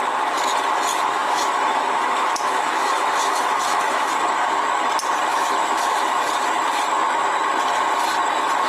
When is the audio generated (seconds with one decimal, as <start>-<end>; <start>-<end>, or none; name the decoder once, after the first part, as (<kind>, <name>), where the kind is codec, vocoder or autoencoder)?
0.9-4.1 (autoencoder, DAC-VAE); 5.3-6.3